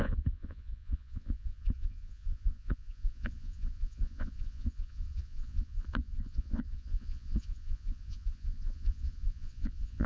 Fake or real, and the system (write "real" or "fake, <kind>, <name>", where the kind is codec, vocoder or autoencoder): fake, vocoder, Vocos